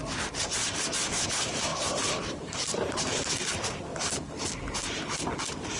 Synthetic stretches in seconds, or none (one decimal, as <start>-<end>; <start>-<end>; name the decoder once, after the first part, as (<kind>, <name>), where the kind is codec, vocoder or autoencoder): 1.7-3.3 (vocoder, BigVGAN v2)